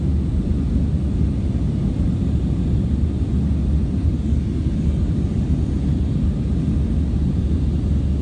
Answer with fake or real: real